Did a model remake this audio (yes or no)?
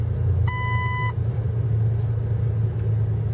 no